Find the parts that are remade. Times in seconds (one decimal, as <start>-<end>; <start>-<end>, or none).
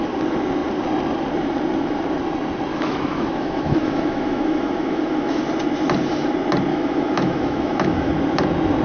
2.7-5.4; 6.7-8.1